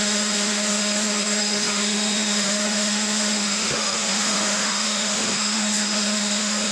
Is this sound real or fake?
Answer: fake